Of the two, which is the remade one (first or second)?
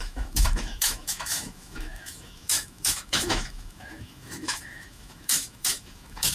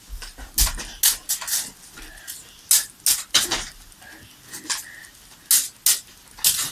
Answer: first